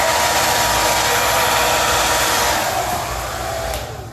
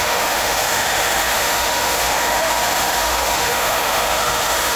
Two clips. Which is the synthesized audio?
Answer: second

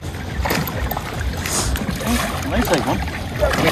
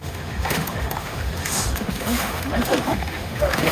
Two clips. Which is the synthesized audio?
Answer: second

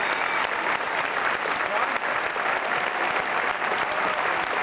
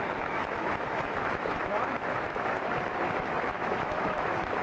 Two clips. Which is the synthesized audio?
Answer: second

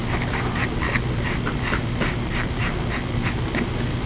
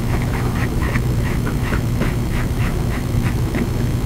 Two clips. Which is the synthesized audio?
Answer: second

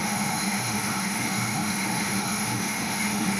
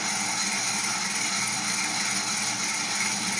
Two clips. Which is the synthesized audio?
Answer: first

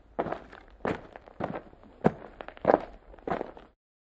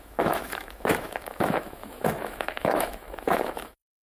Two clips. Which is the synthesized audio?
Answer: second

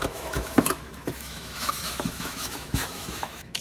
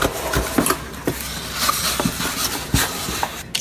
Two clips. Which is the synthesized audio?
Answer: first